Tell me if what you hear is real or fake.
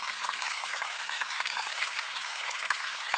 fake